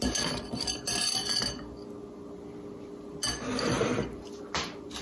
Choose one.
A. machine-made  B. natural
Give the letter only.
B